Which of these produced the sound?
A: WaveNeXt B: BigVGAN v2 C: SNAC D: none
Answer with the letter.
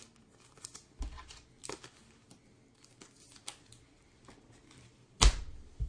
D